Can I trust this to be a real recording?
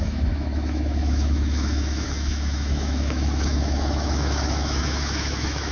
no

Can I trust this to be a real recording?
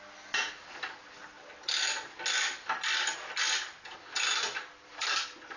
yes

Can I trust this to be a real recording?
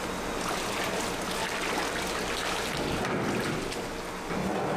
yes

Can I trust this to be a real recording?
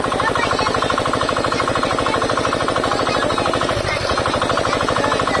yes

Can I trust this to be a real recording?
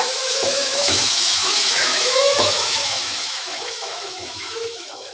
no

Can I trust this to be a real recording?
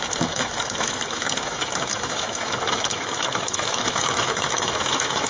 no